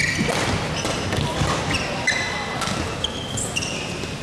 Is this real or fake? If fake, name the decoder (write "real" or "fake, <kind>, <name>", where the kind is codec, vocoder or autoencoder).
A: real